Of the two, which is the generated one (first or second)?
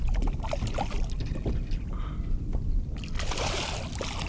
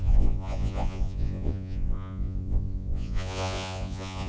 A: second